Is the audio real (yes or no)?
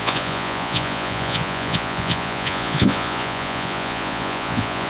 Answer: no